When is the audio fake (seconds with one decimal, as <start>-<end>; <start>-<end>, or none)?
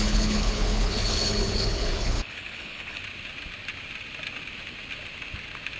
0.0-3.0